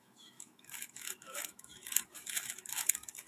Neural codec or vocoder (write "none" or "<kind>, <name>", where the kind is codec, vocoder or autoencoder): autoencoder, DAC-VAE